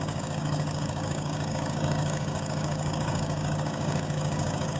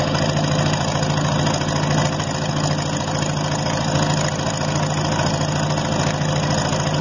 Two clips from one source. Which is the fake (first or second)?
first